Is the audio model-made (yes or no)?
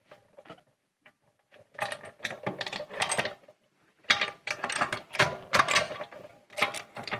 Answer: yes